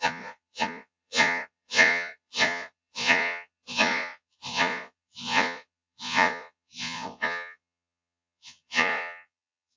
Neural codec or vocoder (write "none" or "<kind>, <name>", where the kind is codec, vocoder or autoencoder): vocoder, Vocos